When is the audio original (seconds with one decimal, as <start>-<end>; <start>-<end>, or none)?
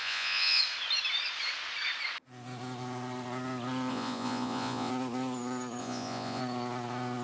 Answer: 0.6-3.9; 4.9-5.8; 6.4-7.2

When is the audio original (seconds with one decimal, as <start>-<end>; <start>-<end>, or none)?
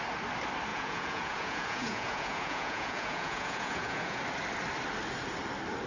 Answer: 0.0-0.7; 4.2-5.9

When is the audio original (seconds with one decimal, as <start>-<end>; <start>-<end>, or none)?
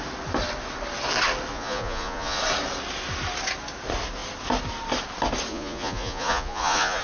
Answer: 0.0-1.5; 2.4-5.5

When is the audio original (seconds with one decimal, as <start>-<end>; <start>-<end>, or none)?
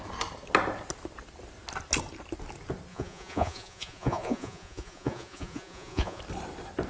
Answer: 0.0-2.9; 6.2-6.9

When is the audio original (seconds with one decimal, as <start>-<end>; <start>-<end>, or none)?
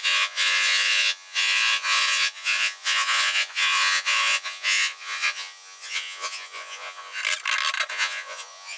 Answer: 7.2-7.9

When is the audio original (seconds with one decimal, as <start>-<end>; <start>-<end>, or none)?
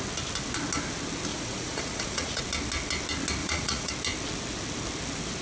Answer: 0.0-1.3; 2.4-3.4; 3.9-5.4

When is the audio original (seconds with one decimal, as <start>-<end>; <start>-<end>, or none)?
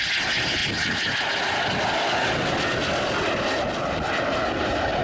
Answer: 0.0-5.0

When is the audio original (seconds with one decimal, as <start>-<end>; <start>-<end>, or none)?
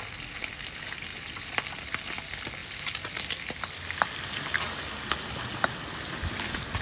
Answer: 0.0-6.8